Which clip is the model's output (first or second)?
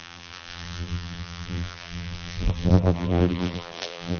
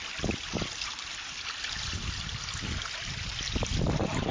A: first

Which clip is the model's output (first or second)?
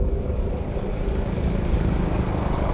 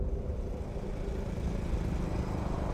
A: first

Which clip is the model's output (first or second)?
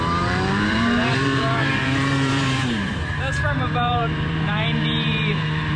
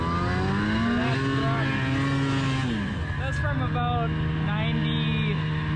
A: first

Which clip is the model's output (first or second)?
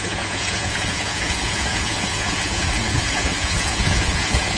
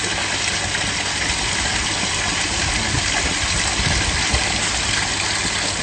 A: first